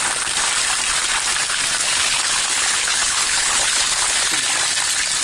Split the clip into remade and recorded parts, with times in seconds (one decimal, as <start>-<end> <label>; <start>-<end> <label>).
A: 0.0-1.8 recorded; 1.8-4.3 remade; 4.3-5.2 recorded